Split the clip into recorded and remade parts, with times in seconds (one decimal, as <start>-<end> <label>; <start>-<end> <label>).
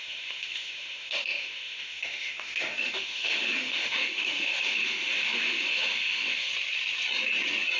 0.0-6.5 remade; 6.5-7.8 recorded